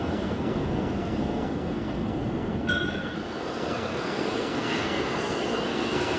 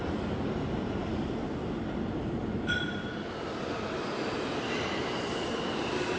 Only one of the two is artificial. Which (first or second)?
first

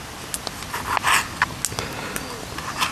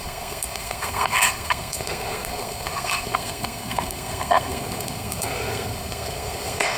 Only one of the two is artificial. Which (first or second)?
second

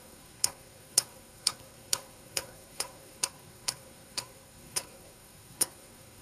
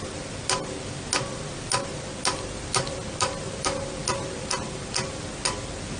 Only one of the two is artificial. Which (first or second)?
first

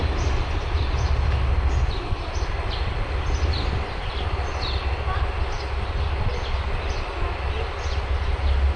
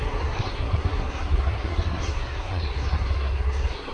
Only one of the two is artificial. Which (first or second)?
second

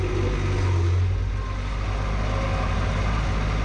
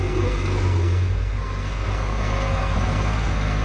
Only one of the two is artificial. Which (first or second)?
second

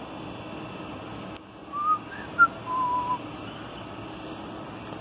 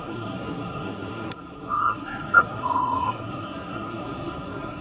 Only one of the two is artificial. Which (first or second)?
second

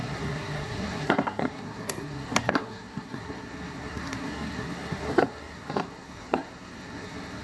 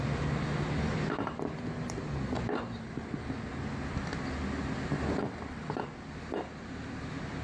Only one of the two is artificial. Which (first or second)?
first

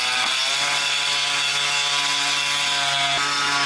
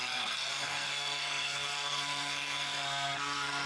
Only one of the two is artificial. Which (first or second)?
second